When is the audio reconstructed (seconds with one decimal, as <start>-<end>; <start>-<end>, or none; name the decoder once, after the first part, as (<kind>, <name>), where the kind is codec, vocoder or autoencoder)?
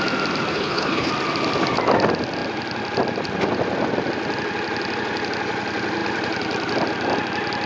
0.5-1.1 (codec, HILCodec)